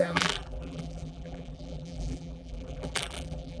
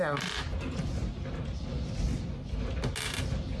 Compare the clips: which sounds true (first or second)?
second